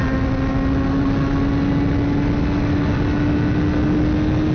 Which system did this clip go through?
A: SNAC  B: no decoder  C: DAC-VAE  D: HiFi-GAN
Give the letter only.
B